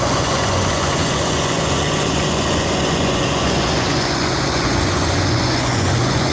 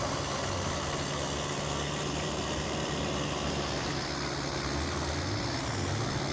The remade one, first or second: first